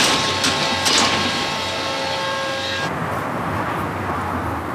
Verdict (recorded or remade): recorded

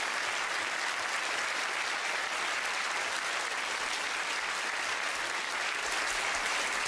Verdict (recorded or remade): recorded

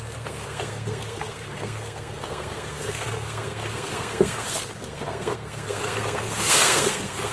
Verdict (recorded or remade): remade